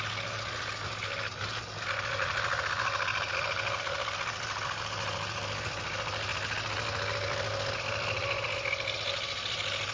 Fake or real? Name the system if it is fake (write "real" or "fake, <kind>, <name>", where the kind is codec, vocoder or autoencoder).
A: real